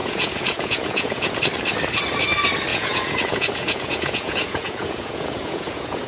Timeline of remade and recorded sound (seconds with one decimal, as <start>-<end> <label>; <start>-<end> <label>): 0.0-1.4 remade; 1.4-2.7 recorded; 2.7-6.1 remade